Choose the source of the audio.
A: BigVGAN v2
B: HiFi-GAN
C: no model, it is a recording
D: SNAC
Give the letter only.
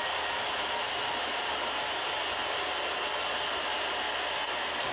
C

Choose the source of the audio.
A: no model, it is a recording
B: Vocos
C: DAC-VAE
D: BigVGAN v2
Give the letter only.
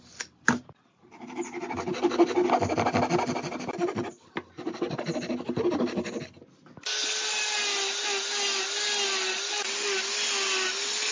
A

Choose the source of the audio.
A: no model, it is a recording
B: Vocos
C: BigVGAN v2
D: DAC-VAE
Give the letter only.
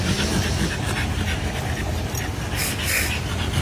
A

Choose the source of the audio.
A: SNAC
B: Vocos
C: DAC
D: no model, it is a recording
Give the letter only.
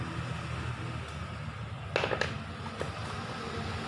D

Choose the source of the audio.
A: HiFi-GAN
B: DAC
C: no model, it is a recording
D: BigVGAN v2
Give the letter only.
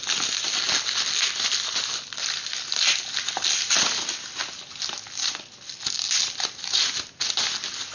C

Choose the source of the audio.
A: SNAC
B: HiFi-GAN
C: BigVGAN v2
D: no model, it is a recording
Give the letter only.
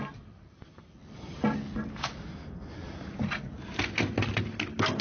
D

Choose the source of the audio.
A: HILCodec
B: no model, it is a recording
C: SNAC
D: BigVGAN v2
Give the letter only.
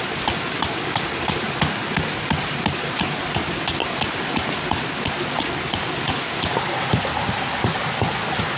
B